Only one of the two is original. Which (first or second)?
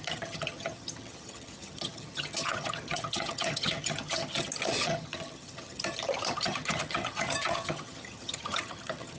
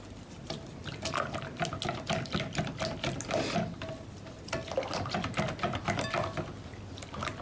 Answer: second